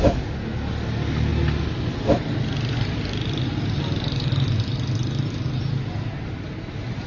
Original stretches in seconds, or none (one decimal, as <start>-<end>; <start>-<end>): 0.0-1.3; 3.8-7.1